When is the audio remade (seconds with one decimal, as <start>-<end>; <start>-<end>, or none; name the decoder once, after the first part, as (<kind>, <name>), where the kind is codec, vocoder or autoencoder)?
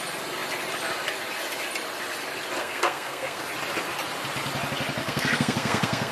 2.6-3.4 (codec, SNAC); 5.0-6.1